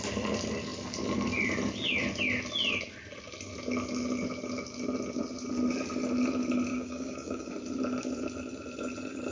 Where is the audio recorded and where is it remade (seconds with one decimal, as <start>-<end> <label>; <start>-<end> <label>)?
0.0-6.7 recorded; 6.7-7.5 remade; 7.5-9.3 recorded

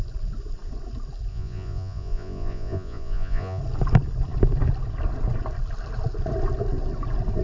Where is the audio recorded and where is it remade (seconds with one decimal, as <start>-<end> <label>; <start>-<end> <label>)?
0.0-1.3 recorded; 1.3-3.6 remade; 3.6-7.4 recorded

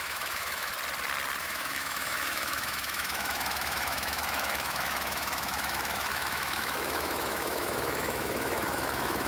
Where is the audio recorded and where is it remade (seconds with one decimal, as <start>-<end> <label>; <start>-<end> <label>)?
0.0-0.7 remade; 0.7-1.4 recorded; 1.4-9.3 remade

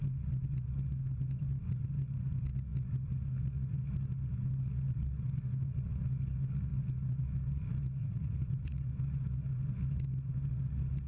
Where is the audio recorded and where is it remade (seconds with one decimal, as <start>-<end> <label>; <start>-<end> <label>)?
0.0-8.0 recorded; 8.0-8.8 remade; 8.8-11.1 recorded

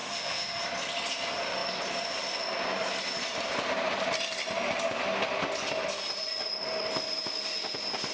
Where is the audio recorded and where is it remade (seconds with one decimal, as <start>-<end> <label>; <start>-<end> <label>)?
0.0-0.6 remade; 0.6-8.1 recorded

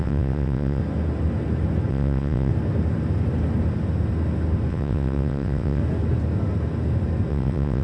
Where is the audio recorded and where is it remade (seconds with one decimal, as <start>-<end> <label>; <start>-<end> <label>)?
0.0-0.8 remade; 0.8-1.9 recorded; 1.9-2.5 remade; 2.5-4.7 recorded; 4.7-5.8 remade; 5.8-7.3 recorded; 7.3-7.8 remade

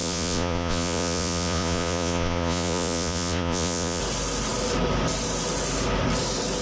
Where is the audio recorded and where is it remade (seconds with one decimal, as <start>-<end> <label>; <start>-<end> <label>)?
0.0-4.0 remade; 4.0-6.6 recorded